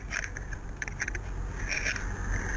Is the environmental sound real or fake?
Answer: real